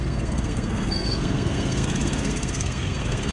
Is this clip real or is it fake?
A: fake